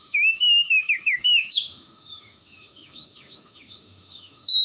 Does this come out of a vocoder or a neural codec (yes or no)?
yes